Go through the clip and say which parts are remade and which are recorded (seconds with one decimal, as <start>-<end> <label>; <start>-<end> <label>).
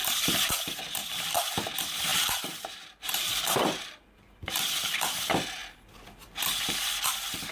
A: 0.0-0.8 remade; 0.8-2.1 recorded; 2.1-4.6 remade; 4.6-7.5 recorded